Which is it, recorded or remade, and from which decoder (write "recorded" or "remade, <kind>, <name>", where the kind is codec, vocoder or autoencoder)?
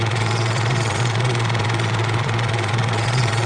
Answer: remade, vocoder, Vocos